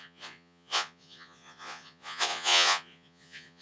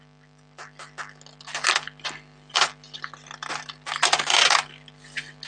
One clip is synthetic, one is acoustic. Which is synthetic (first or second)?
first